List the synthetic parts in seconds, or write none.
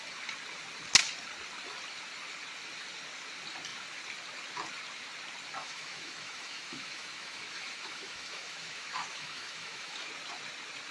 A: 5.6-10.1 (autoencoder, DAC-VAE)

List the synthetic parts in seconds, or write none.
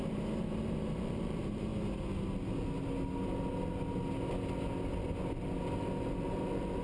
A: 0.0-1.7 (vocoder, BigVGAN v2); 5.6-6.8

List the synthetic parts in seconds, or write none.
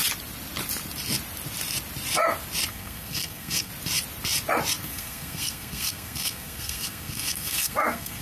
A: 2.7-3.7 (codec, SNAC); 4.8-8.2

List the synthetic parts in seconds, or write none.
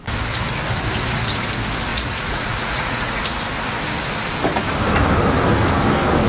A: 1.9-3.2 (vocoder, Vocos)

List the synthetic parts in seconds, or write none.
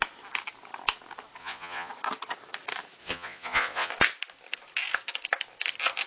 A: 1.4-1.9 (vocoder, Vocos); 3.0-3.9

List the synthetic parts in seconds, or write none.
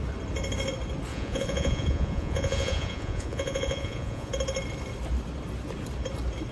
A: 1.1-4.3 (vocoder, Vocos)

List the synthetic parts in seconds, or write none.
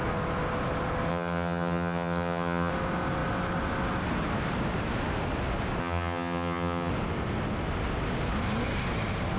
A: 1.1-2.7 (vocoder, HiFi-GAN); 5.8-6.9